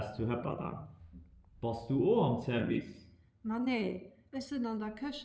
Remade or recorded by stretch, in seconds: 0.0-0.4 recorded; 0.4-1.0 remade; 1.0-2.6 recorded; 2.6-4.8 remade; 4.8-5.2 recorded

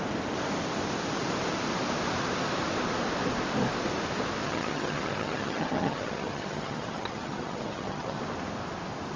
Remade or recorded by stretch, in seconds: 0.0-4.4 recorded; 4.4-8.2 remade; 8.2-9.2 recorded

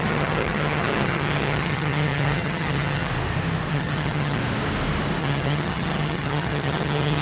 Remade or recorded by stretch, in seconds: 0.0-3.1 remade; 3.1-3.7 recorded; 3.7-4.4 remade; 4.4-5.2 recorded; 5.2-7.2 remade

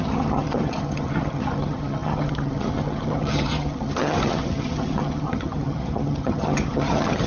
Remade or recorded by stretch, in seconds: 0.0-7.3 remade

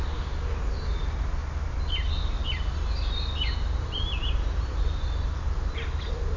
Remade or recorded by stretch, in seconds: 0.0-6.4 recorded

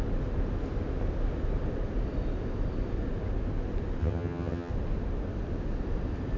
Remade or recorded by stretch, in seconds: 0.0-4.0 recorded; 4.0-4.7 remade; 4.7-6.4 recorded